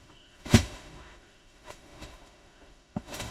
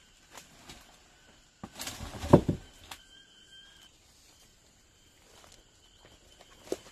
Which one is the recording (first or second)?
second